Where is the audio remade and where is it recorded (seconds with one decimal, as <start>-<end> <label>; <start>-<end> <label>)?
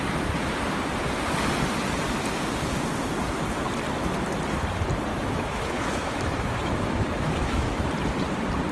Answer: 0.0-5.1 recorded; 5.1-7.9 remade; 7.9-8.7 recorded